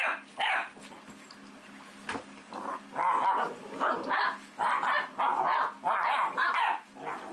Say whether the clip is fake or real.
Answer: real